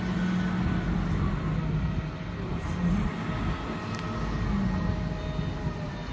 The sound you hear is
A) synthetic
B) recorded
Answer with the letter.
B